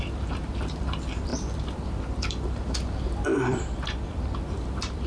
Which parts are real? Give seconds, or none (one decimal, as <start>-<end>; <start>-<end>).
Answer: none